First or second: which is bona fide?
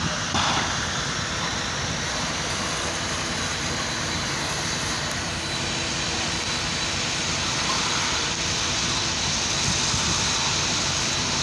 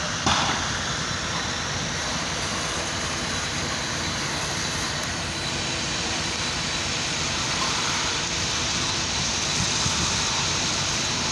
first